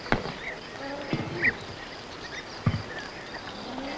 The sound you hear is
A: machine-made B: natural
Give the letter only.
B